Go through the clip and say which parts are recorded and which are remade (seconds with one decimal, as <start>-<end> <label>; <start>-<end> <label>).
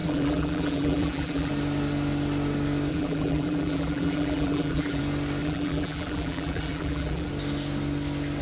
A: 0.0-1.5 remade; 1.5-2.9 recorded; 2.9-5.0 remade; 5.0-5.4 recorded; 5.4-7.3 remade; 7.3-8.4 recorded